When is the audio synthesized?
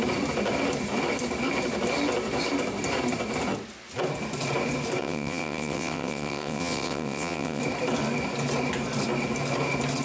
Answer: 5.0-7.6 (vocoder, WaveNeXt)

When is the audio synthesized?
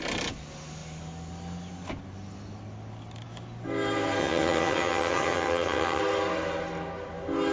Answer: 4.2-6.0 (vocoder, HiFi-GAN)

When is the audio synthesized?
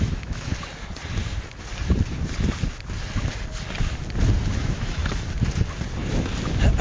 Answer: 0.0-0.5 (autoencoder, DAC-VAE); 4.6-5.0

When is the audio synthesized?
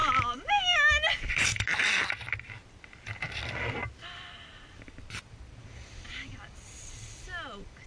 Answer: none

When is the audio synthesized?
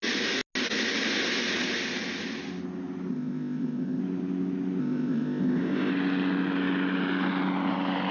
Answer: 3.1-4.0 (codec, ZipCodec); 4.8-5.9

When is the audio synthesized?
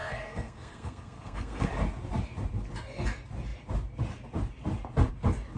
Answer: 0.0-1.7 (codec, SNAC)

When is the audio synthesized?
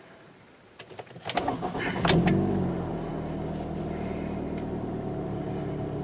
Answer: none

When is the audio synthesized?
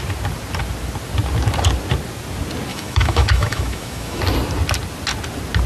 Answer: 2.7-4.2 (autoencoder, DAC-VAE)